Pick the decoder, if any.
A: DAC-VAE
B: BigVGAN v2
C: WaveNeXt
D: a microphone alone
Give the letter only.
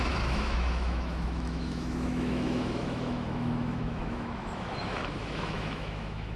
A